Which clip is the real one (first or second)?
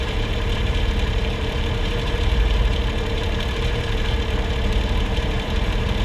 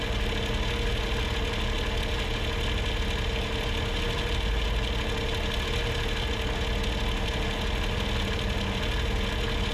second